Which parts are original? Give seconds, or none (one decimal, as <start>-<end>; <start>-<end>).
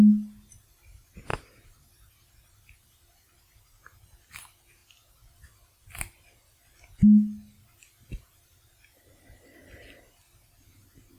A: 0.0-11.2